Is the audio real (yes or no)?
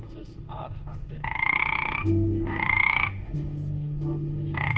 no